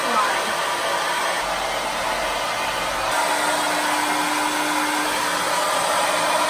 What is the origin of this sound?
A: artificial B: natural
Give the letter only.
B